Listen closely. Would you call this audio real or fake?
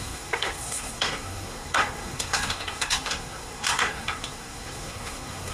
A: fake